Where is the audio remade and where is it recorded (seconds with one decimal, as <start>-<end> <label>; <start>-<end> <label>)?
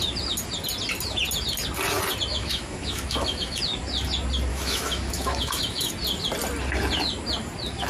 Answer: 0.0-2.3 recorded; 2.3-3.6 remade; 3.6-4.5 recorded; 4.5-5.9 remade; 5.9-7.9 recorded